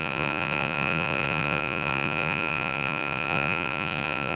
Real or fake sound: fake